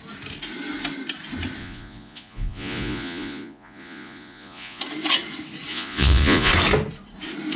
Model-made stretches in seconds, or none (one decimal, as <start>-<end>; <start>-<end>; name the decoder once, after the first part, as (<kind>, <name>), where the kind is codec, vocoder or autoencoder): 1.6-4.8 (vocoder, Vocos); 5.7-6.5